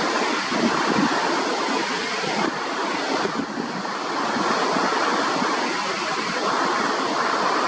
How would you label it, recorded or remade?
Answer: recorded